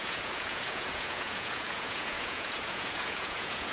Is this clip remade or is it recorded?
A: remade